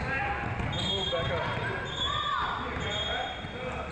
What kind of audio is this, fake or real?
real